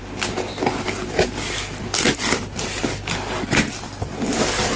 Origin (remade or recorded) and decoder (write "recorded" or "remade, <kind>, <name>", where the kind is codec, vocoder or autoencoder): recorded